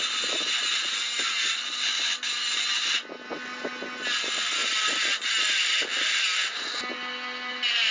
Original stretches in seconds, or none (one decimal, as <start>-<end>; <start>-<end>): 0.0-7.9